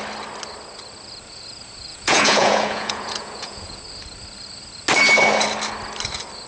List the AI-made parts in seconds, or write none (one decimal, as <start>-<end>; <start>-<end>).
1.9-3.8